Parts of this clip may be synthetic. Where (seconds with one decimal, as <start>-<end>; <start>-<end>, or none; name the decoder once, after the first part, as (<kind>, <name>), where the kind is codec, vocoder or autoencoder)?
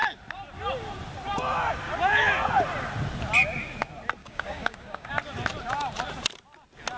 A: 4.2-5.1 (codec, DAC)